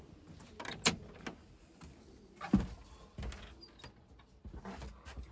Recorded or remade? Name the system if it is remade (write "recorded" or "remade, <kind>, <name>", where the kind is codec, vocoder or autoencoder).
recorded